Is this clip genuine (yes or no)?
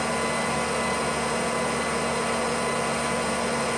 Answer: yes